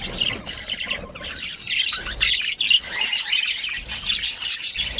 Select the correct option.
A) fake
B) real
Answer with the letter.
B